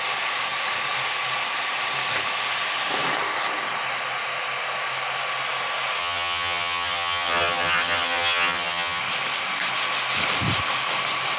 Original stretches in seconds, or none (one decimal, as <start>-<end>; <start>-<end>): 0.0-6.0; 9.0-11.4

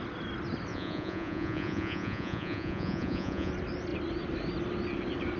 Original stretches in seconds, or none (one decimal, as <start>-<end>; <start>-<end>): 0.0-0.7; 3.5-5.4